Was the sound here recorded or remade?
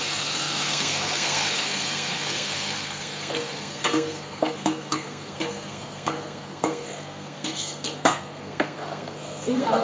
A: remade